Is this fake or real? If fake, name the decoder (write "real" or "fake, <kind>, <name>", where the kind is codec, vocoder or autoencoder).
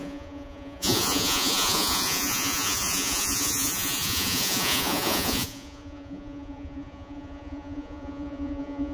fake, vocoder, Vocos